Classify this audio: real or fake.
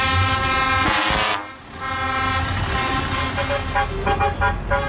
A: real